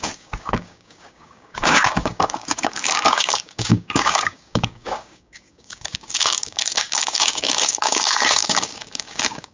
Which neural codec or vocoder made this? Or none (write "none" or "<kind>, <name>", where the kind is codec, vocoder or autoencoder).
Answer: codec, DAC